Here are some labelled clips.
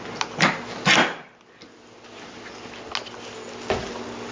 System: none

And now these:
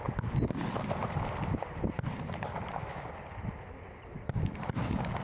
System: none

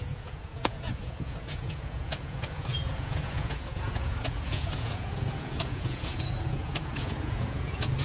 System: vocoder, Vocos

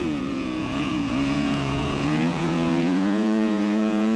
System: vocoder, Vocos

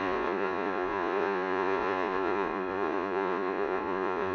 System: vocoder, Vocos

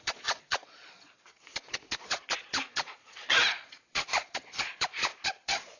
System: vocoder, Vocos